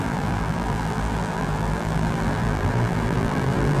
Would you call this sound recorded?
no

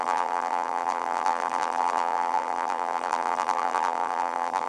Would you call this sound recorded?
no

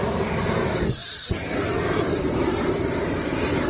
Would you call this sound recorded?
no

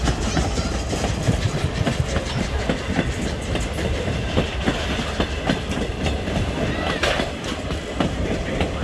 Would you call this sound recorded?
no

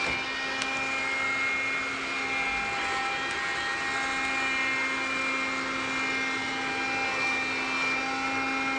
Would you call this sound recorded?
yes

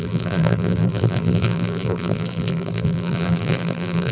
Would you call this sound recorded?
no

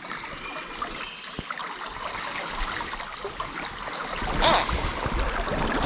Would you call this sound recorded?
yes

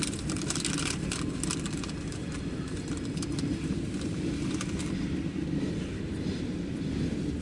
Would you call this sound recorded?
no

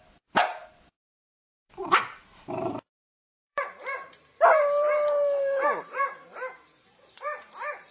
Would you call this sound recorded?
no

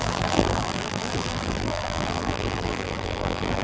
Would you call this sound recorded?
no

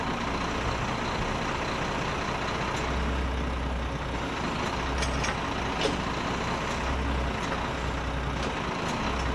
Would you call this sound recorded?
yes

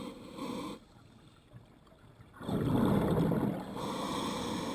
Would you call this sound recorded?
yes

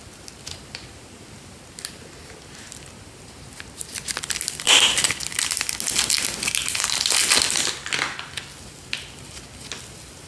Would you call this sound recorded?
yes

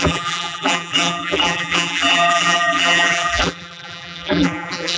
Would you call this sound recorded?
no